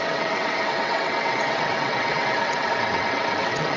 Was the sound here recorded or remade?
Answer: remade